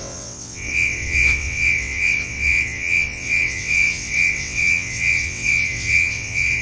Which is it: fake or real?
fake